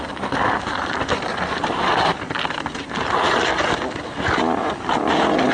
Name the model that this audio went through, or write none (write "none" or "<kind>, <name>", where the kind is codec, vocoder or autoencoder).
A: none